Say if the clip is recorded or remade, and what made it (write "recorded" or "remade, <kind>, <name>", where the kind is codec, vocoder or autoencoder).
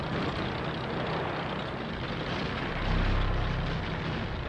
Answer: recorded